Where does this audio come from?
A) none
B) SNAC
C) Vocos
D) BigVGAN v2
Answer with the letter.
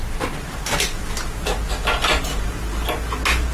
A